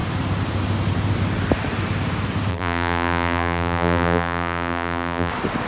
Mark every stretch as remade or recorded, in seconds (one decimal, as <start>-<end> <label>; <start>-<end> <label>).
0.0-2.5 recorded; 2.5-5.3 remade; 5.3-5.7 recorded